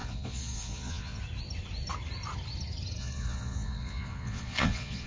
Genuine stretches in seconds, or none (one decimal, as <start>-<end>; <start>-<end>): 1.2-3.0